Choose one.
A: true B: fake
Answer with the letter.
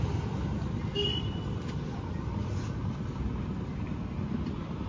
A